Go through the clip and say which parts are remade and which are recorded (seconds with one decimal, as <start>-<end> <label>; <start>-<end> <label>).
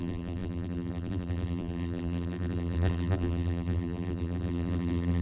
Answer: 0.0-5.2 remade